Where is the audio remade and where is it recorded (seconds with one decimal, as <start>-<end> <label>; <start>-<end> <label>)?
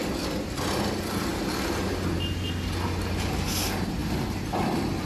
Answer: 0.0-5.1 recorded